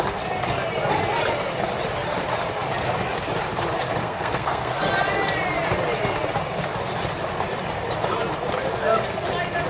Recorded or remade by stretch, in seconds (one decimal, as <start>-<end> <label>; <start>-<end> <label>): 0.0-4.0 recorded; 4.0-4.9 remade; 4.9-9.7 recorded